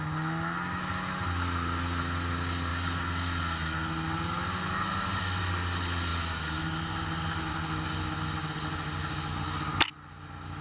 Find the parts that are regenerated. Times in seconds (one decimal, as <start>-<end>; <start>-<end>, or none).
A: none